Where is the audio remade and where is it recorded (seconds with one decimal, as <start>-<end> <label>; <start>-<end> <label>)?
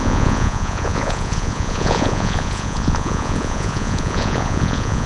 0.0-5.1 remade